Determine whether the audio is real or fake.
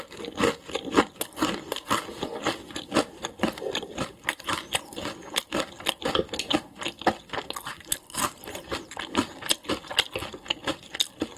real